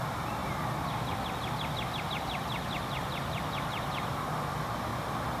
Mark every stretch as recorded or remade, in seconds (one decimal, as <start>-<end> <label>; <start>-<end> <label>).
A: 0.0-0.4 remade; 0.4-3.6 recorded; 3.6-4.9 remade; 4.9-5.4 recorded